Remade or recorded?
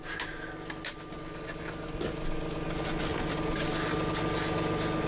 recorded